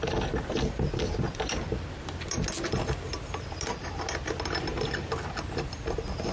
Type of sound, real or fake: real